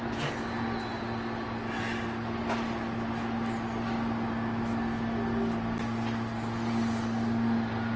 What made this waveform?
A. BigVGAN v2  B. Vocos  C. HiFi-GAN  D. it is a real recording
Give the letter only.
D